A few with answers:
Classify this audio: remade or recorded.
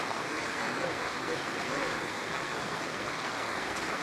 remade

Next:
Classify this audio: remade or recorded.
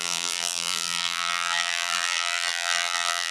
remade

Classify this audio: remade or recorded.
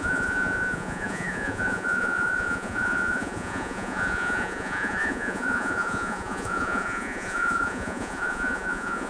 remade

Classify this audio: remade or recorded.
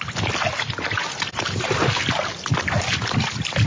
recorded